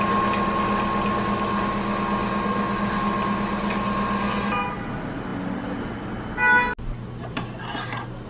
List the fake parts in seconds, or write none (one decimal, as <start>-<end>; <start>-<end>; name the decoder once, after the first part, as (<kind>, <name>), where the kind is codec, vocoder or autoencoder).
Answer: none